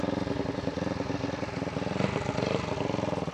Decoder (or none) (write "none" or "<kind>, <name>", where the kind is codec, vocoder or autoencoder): none